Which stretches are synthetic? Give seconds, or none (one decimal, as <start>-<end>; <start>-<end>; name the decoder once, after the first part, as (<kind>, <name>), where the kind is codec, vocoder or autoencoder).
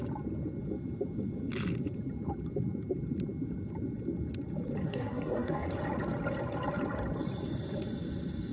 4.8-5.7 (codec, SNAC)